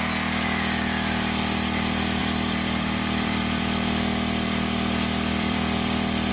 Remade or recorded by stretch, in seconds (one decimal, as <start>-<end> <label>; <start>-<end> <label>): 0.0-2.2 recorded; 2.2-6.3 remade